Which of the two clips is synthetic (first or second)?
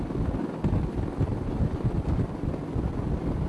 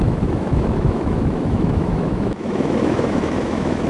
second